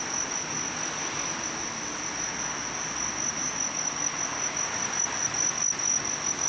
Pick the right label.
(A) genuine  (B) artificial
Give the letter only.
A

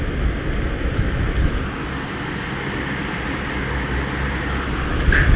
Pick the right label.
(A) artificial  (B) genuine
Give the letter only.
B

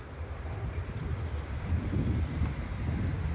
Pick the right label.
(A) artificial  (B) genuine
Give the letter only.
A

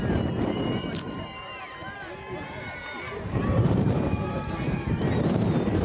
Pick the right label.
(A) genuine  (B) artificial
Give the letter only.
B